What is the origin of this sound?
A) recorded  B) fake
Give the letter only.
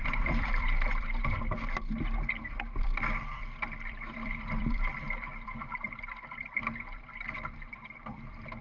B